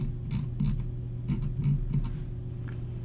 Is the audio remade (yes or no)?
no